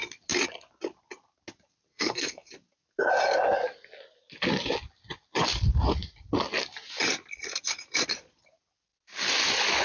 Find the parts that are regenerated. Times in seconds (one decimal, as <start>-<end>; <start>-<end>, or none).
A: 1.9-2.5